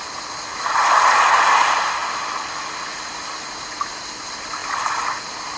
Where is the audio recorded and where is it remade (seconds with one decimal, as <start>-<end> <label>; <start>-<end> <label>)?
0.0-5.6 recorded